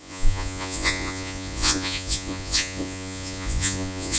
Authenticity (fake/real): fake